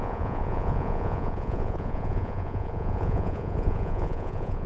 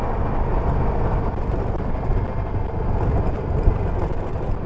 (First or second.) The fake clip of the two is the first